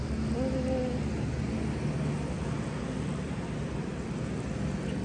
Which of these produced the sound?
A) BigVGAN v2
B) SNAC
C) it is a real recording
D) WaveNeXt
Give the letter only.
C